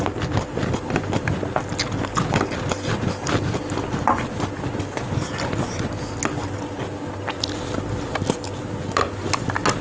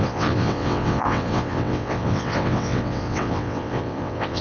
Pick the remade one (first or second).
second